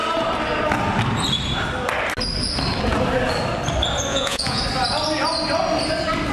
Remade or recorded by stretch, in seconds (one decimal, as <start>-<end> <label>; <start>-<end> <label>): 0.0-4.1 recorded; 4.1-4.6 remade; 4.6-6.3 recorded